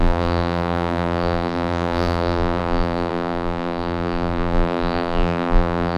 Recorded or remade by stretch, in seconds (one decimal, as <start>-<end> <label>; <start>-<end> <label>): 0.0-6.0 remade

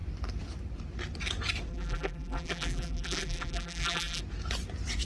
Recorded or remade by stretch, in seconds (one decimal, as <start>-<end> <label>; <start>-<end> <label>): 0.0-1.7 recorded; 1.7-4.2 remade; 4.2-5.0 recorded

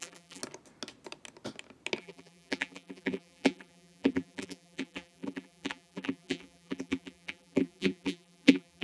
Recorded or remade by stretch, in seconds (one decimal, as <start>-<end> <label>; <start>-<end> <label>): 0.0-0.4 remade; 0.4-2.0 recorded; 2.0-8.8 remade